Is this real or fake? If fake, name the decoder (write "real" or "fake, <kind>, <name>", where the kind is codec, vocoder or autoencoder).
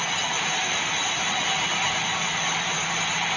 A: real